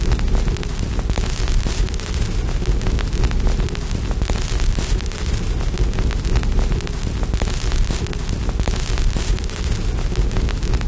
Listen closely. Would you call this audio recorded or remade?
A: recorded